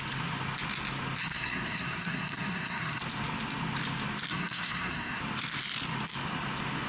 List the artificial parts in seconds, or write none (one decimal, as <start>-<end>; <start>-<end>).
1.2-3.0; 4.3-5.2